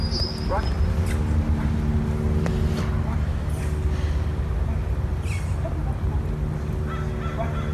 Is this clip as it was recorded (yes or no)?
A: yes